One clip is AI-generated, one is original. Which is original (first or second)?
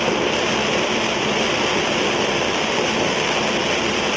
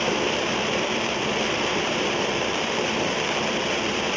first